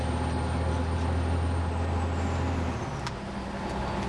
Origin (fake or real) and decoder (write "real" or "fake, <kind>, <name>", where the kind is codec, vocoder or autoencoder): real